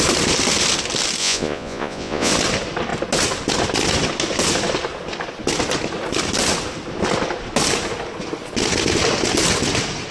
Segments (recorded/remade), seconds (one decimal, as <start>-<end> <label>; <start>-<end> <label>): 0.0-1.2 recorded; 1.2-2.3 remade; 2.3-10.1 recorded